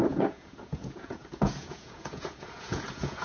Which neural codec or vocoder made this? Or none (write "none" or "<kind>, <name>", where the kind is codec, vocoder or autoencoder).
vocoder, Vocos